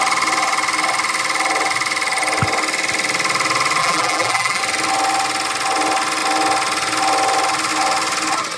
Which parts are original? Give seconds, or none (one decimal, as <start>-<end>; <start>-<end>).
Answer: 0.0-3.8; 4.6-8.6